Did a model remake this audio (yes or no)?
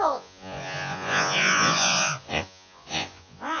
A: yes